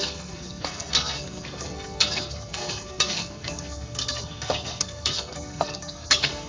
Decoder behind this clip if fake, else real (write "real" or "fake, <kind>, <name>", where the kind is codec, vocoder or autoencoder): fake, codec, SNAC